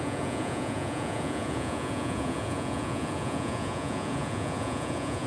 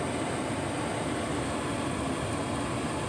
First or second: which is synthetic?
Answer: first